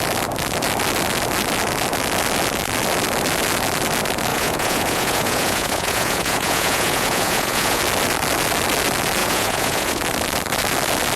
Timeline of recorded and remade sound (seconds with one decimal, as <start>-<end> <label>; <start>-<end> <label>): 0.0-4.3 recorded; 4.3-7.8 remade; 7.8-9.2 recorded; 9.2-10.0 remade; 10.0-11.2 recorded